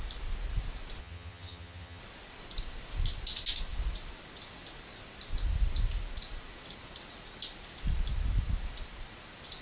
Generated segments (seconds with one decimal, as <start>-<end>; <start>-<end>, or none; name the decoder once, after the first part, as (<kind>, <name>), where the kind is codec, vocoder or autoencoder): 1.0-2.0 (vocoder, HiFi-GAN)